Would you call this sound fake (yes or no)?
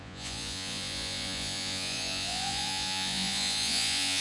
yes